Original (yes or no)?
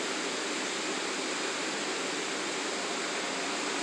yes